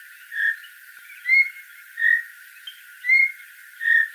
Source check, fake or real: real